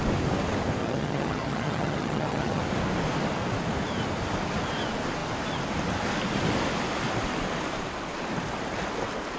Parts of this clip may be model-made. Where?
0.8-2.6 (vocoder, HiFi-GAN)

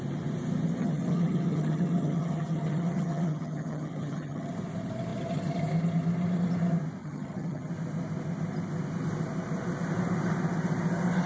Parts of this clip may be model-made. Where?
0.8-4.5 (vocoder, HiFi-GAN); 7.0-7.7

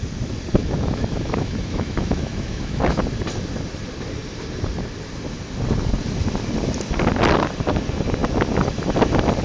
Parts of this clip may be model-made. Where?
0.6-3.0 (autoencoder, DAC-VAE)

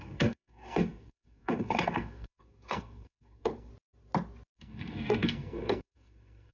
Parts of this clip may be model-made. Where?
0.0-3.7 (codec, SNAC); 4.5-6.5

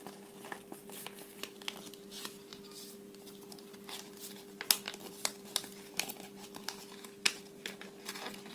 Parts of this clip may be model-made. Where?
0.8-1.6 (vocoder, BigVGAN v2); 2.5-6.8

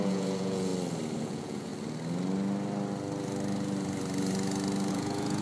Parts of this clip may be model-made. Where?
0.0-0.7 (vocoder, Vocos); 1.2-1.7; 4.9-5.4